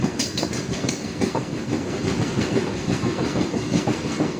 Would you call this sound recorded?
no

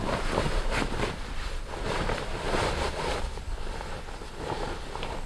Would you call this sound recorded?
yes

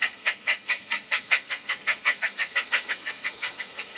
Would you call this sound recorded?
no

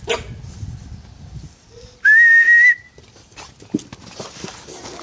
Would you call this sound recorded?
yes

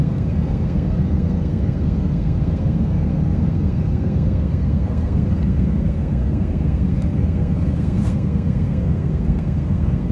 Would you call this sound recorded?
no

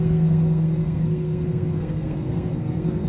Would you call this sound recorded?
no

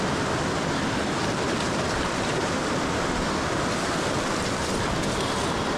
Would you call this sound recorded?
yes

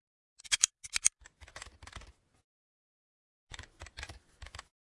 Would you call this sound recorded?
yes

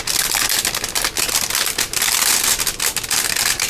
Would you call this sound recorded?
yes